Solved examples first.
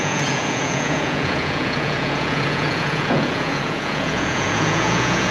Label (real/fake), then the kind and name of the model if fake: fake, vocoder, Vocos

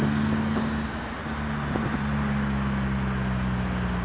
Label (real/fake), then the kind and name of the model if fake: real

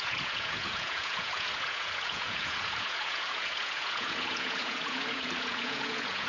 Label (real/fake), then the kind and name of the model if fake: fake, vocoder, Vocos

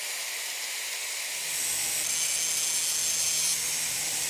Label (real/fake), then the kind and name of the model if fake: real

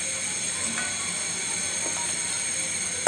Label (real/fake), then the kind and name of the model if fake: real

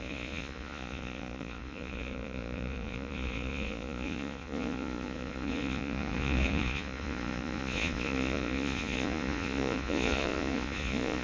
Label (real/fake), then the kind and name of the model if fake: fake, vocoder, Vocos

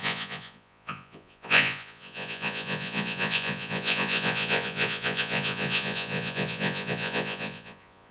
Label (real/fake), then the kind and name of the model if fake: fake, vocoder, Vocos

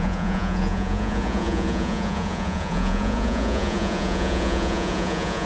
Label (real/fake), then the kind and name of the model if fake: fake, vocoder, Vocos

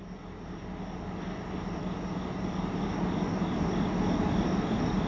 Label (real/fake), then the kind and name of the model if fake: real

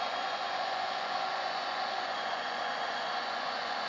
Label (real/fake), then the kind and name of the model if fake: fake, vocoder, Vocos